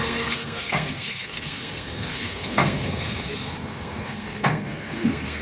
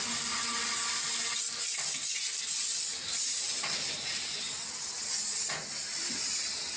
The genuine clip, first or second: second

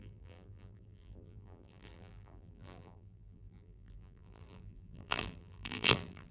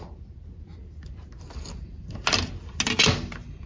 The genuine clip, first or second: second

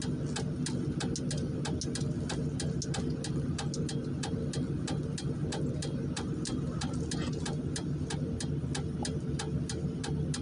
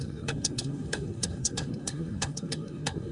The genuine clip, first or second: first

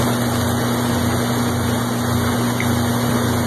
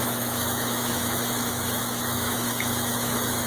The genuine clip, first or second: first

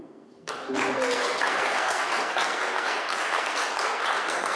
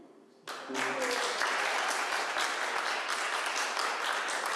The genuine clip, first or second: second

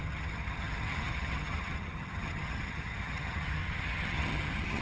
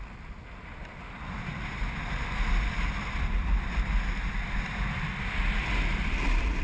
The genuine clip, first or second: second